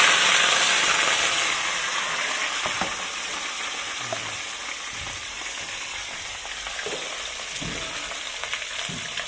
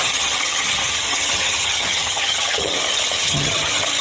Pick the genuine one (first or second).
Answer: first